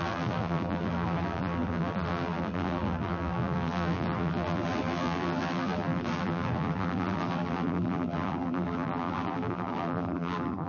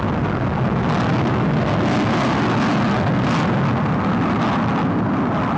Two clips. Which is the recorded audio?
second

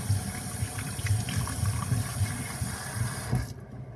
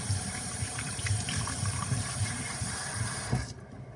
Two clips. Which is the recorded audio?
first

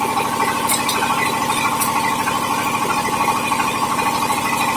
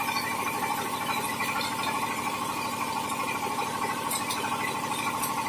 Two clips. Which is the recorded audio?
first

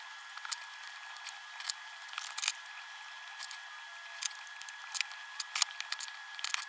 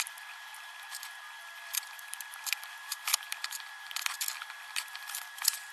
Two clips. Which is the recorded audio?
first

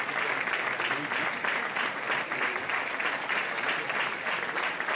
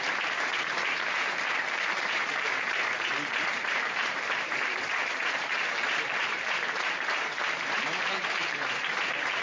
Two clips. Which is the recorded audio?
first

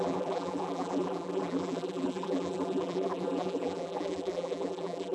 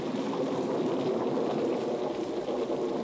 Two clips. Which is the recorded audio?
second